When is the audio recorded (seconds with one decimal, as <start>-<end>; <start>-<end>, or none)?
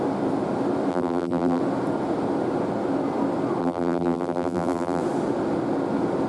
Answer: 0.0-0.9; 1.6-3.6; 5.0-6.3